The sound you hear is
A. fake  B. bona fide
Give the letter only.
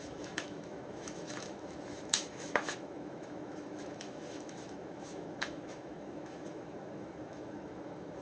A